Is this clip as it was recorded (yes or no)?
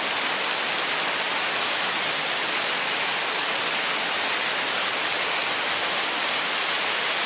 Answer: yes